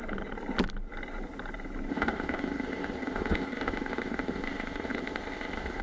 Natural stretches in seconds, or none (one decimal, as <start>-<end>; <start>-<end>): 0.0-1.9